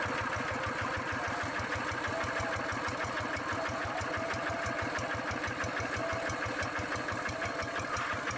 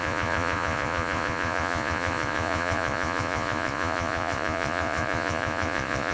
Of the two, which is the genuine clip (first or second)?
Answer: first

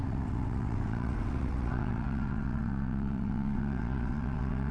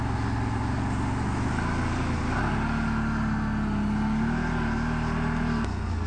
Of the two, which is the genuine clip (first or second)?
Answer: second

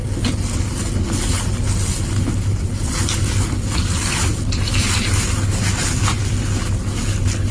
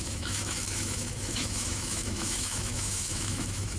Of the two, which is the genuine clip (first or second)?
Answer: first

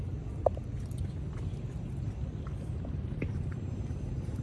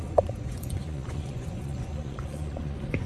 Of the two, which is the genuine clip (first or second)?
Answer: first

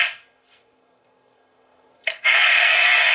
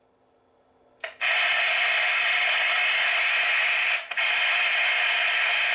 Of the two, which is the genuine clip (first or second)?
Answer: second